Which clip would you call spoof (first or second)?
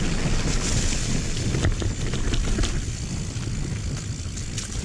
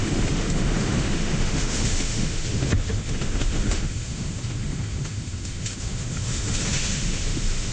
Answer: second